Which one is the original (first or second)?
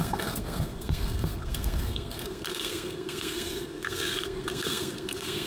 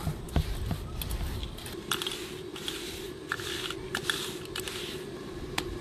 second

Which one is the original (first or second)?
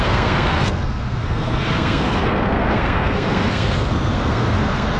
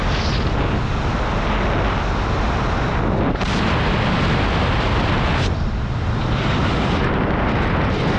second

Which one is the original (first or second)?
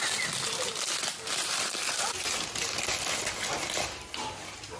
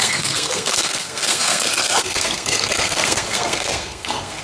first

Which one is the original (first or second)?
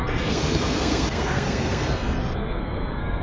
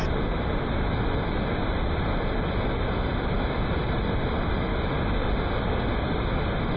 second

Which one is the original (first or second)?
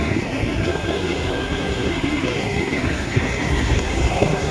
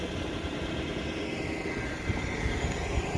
second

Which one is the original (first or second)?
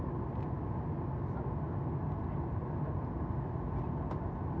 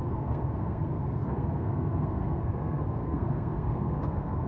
first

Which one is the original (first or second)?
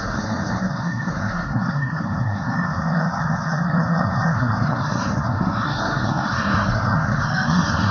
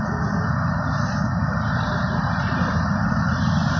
second